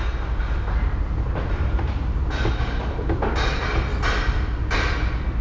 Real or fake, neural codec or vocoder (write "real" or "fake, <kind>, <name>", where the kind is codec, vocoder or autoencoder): real